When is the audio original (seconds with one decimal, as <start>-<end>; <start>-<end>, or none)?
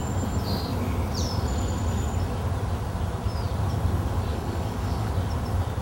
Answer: 0.0-4.3; 5.1-5.8